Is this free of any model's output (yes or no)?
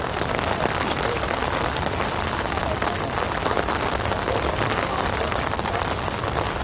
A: yes